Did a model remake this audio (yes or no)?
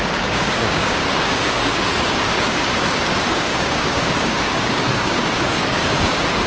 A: yes